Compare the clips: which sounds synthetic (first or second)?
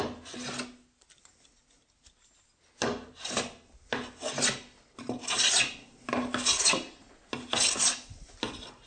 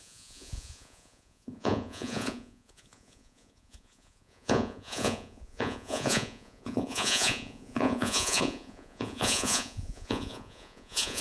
second